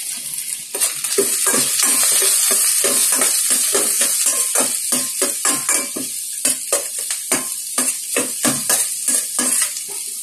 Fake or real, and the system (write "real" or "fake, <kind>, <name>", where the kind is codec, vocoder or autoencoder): real